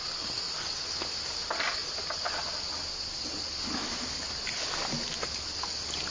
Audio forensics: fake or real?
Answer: real